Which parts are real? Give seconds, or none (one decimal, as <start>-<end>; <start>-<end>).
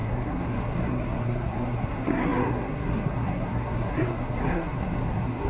none